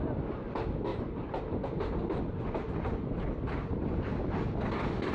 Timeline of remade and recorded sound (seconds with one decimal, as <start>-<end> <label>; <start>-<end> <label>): 0.0-5.1 recorded